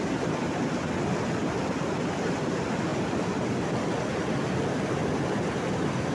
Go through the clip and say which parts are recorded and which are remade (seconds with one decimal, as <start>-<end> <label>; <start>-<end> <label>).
0.0-6.1 recorded